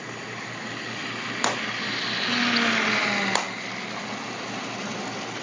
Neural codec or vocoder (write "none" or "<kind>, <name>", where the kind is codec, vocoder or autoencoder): none